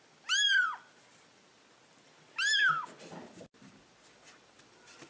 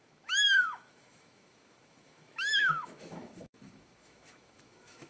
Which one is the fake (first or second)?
second